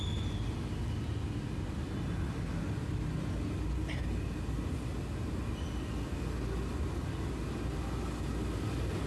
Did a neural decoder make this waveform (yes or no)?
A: no